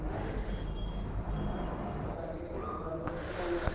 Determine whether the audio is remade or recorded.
recorded